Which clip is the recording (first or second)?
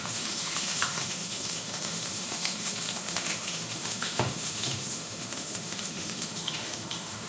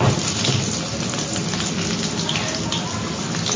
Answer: second